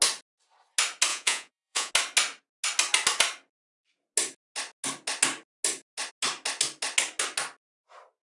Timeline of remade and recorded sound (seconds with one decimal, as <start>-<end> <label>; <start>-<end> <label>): 0.0-1.1 recorded; 1.1-1.9 remade; 1.9-8.4 recorded